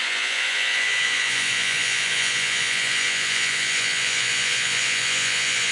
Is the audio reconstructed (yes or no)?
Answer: yes